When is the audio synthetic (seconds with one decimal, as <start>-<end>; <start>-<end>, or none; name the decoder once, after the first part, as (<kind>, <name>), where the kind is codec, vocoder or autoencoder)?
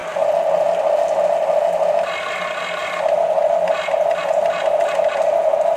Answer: none